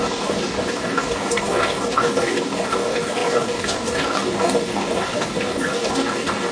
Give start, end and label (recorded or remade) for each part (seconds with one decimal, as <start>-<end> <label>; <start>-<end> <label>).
0.0-6.5 remade